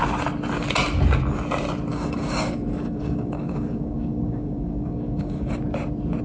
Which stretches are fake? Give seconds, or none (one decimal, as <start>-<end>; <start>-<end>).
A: 1.9-5.6